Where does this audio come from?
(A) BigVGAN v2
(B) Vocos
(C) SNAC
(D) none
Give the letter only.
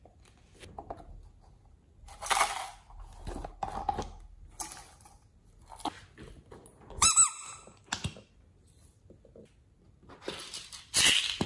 D